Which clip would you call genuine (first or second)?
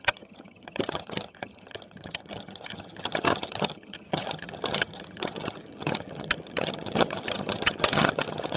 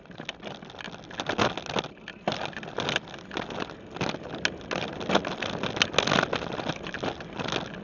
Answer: second